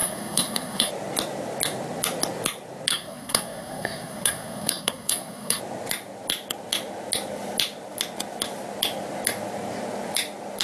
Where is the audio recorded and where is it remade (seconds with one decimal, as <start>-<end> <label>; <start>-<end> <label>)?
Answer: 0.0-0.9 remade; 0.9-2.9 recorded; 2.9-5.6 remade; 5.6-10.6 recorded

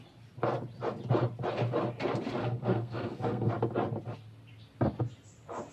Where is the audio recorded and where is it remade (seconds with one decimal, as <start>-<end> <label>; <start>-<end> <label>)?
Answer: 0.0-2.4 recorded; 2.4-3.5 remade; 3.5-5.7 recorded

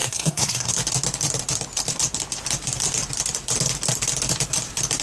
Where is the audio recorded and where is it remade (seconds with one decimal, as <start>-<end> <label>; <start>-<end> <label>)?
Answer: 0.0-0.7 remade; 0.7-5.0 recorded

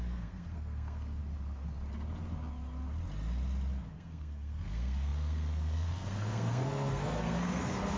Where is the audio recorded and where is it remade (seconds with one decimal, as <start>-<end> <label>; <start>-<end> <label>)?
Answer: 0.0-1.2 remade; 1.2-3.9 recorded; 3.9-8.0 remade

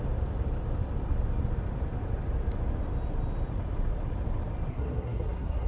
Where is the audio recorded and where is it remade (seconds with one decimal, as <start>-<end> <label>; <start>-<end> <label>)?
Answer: 0.0-4.7 recorded; 4.7-5.7 remade

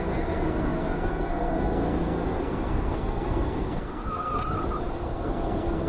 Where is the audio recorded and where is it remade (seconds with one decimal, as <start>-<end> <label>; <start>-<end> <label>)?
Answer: 0.0-4.4 remade; 4.4-4.9 recorded; 4.9-5.9 remade

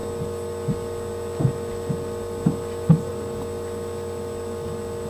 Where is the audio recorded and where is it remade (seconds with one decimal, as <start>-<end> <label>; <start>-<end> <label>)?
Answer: 0.0-5.1 recorded

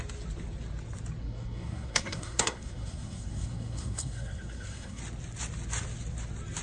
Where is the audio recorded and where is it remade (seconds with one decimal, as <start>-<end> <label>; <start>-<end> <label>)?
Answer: 0.0-1.2 recorded; 1.2-5.0 remade; 5.0-6.6 recorded